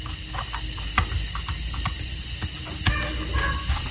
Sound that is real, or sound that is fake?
real